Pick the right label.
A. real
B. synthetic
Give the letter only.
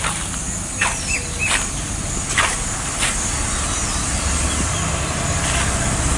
A